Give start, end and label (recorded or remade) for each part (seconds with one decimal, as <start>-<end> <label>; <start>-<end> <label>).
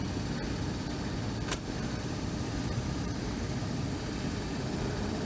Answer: 0.0-1.5 recorded; 1.5-3.8 remade; 3.8-5.2 recorded